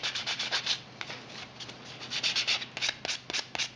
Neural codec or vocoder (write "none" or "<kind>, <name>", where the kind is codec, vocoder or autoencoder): none